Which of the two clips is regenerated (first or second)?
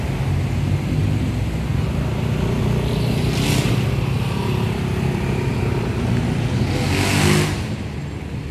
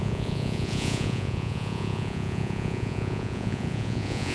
second